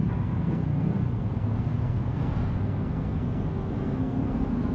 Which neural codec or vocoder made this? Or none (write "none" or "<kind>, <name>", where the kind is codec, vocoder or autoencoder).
codec, SNAC